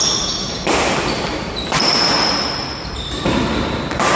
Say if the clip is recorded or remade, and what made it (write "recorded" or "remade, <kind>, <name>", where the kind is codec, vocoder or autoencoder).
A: recorded